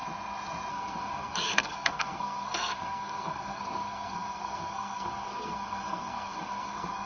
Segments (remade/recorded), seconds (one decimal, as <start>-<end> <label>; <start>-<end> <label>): 0.0-0.7 recorded; 0.7-7.1 remade